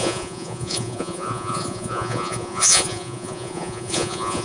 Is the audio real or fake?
fake